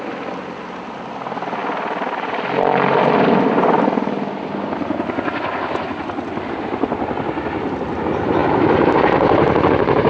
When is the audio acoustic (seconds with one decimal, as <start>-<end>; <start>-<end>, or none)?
0.0-10.1